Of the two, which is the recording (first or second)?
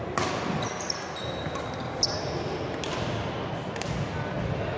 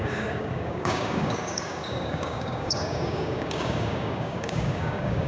first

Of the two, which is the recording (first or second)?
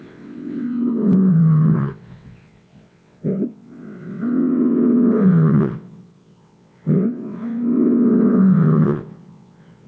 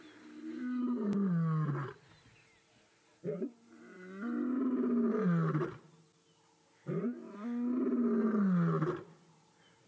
second